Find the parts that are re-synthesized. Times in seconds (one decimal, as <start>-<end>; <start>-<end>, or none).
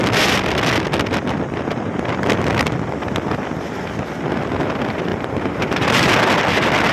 5.1-6.1